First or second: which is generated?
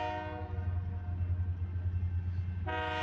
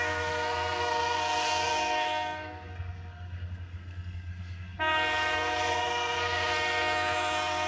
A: second